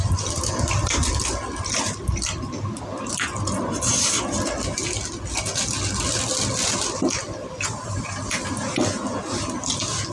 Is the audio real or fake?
real